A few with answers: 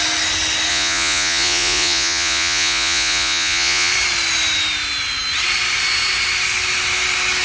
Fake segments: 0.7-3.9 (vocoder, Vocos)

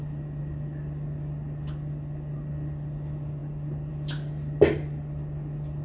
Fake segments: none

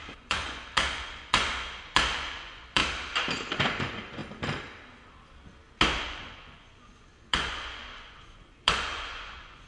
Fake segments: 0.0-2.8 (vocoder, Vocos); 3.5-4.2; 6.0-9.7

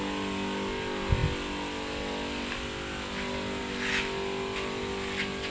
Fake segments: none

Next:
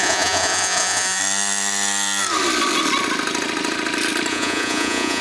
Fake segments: 0.0-1.2 (vocoder, Vocos); 4.3-5.2

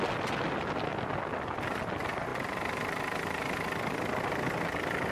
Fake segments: none

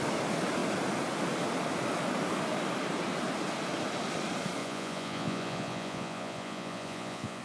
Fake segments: 4.6-7.4 (vocoder, Vocos)

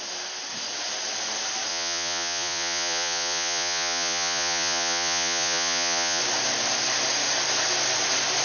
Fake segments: 1.7-6.2 (vocoder, Vocos)